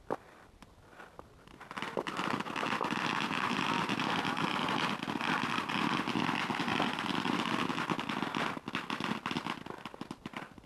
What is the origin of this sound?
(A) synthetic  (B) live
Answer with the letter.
B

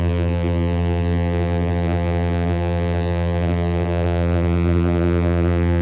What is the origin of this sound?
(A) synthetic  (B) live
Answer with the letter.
A